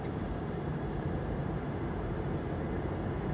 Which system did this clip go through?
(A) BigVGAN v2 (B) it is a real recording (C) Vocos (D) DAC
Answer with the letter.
A